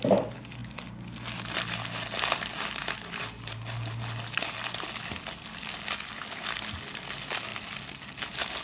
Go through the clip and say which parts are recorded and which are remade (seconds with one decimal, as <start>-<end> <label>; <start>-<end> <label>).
0.0-8.6 recorded